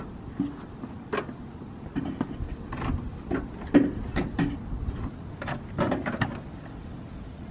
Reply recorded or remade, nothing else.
recorded